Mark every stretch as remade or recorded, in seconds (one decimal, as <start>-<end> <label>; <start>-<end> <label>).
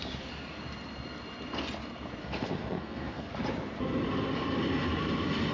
0.0-2.2 recorded; 2.2-3.3 remade; 3.3-5.5 recorded